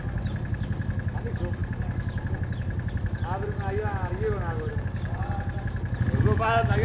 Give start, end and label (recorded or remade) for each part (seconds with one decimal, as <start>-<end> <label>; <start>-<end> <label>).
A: 0.0-4.7 recorded; 4.7-5.2 remade; 5.2-6.8 recorded